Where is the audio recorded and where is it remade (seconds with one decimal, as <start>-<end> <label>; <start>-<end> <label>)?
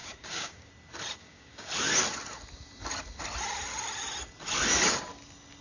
0.0-0.7 remade; 0.7-1.2 recorded; 1.2-1.7 remade; 1.7-5.6 recorded